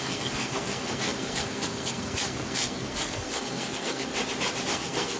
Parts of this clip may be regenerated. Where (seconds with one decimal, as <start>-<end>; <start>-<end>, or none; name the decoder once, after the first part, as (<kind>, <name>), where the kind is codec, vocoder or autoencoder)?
0.0-4.1 (codec, SNAC); 4.7-5.2